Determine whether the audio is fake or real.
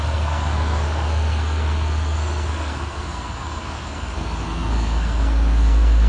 fake